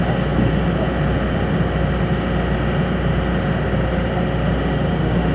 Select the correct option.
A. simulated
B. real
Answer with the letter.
B